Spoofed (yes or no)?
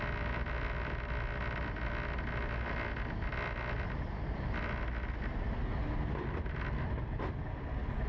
no